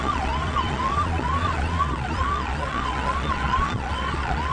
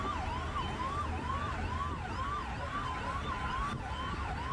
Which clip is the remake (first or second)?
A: first